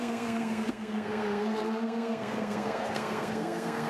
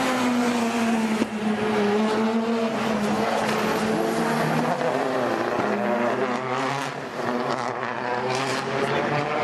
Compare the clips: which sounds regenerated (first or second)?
first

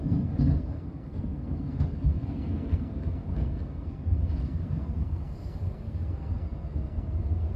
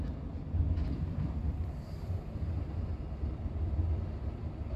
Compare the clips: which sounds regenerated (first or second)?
first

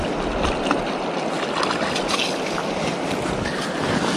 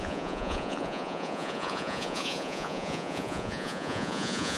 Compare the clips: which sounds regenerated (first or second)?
second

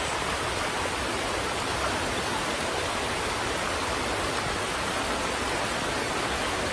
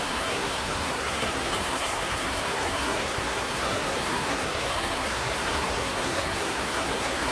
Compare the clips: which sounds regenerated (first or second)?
second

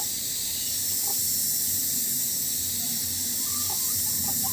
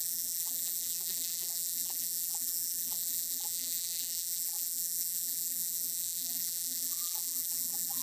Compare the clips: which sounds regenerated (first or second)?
second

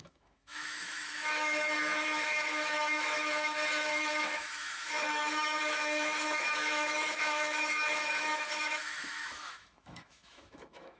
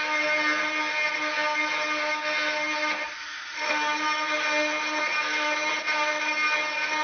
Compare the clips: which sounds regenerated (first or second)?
first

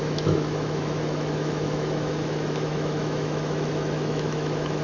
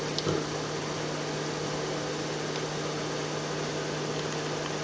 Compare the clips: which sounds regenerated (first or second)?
first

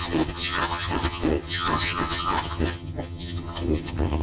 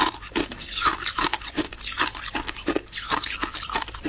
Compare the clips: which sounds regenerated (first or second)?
first